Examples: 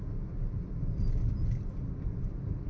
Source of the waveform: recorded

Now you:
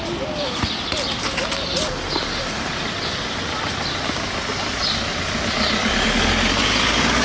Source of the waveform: recorded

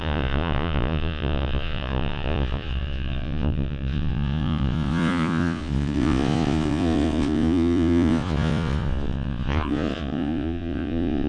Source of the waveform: remade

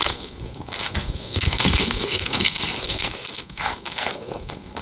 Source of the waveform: remade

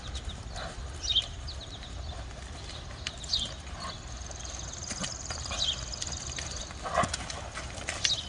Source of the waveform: recorded